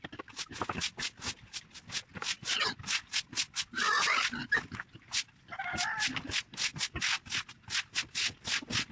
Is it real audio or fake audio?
real